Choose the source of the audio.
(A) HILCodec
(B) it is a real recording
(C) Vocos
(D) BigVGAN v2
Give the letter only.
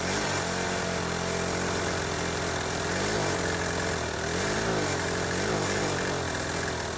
B